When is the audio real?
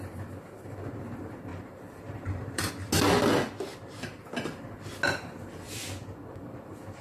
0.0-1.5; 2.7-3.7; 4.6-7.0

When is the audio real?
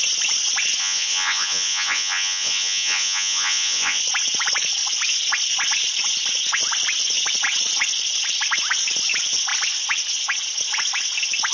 0.0-0.8; 4.0-11.5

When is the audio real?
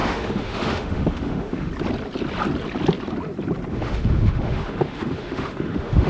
1.7-3.7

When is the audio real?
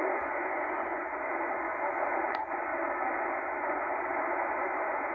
1.3-2.3; 2.7-3.4